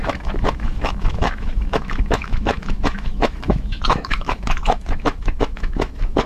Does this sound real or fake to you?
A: fake